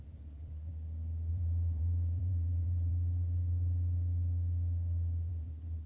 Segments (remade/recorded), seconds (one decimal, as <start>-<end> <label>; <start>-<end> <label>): 0.0-0.7 remade; 0.7-1.3 recorded; 1.3-2.9 remade; 2.9-5.3 recorded; 5.3-5.9 remade